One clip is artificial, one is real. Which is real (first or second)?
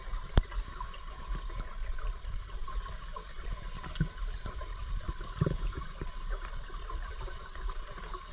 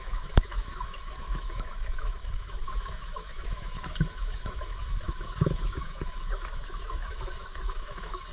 first